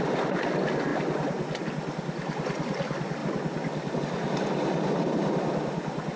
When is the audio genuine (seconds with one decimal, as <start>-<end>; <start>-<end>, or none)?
0.0-6.2